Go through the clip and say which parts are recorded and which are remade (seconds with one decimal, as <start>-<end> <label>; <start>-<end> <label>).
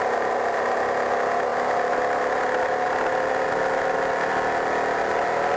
0.0-5.6 recorded